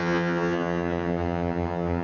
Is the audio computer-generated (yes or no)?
yes